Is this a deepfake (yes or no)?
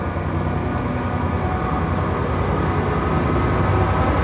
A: no